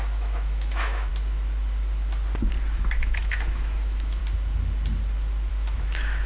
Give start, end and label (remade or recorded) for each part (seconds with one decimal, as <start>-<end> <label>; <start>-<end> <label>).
0.0-1.1 remade; 1.1-3.0 recorded; 3.0-4.2 remade; 4.2-5.5 recorded; 5.5-6.3 remade